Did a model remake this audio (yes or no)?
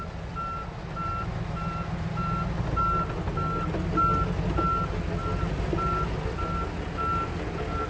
no